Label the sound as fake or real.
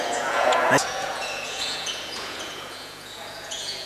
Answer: fake